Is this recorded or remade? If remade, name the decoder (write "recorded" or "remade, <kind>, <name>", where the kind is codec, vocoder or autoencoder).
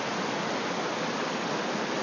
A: recorded